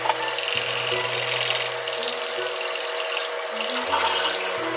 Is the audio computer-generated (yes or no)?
no